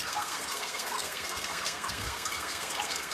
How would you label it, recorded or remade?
remade